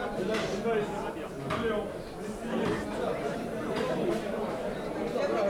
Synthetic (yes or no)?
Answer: no